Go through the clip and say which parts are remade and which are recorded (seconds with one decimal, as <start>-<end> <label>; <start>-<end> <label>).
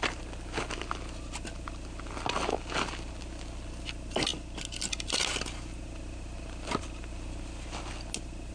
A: 0.0-8.5 recorded